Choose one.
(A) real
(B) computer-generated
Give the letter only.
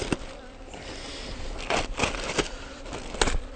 A